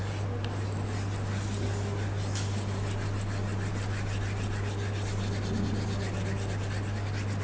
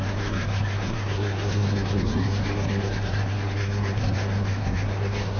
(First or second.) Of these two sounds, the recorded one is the first